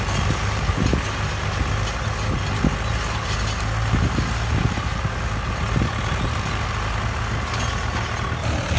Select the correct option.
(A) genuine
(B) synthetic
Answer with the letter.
A